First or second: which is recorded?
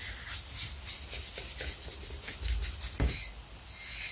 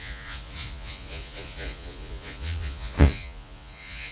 first